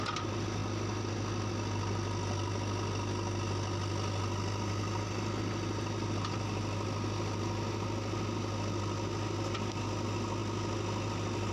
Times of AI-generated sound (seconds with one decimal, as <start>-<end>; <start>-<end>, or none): none